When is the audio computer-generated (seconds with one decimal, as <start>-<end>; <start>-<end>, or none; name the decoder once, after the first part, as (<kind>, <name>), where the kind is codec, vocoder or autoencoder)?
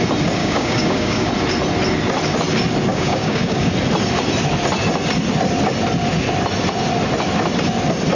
0.4-1.3 (codec, DAC); 2.9-3.7